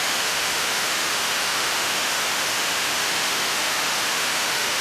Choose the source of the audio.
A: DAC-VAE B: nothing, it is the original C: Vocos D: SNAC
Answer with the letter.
A